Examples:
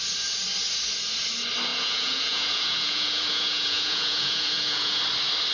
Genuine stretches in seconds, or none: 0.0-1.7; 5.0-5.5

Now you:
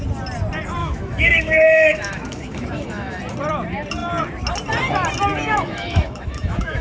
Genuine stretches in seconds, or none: 0.0-0.8; 3.2-5.3

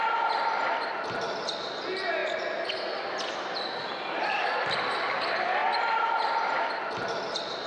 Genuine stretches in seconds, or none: 0.0-5.6; 6.7-7.7

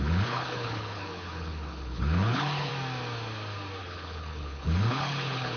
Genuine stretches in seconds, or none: 2.7-3.8